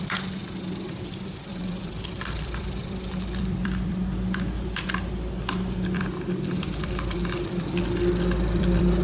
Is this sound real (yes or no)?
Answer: no